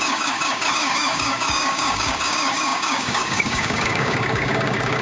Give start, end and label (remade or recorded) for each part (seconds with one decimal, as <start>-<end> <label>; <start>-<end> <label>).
0.0-5.0 remade